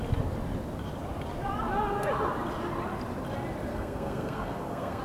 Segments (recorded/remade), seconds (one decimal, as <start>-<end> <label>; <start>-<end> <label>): 0.0-3.7 recorded; 3.7-5.0 remade